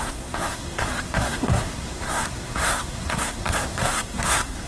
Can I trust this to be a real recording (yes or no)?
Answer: no